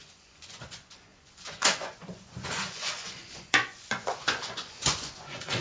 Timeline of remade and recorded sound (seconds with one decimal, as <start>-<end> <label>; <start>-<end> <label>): 0.0-5.6 remade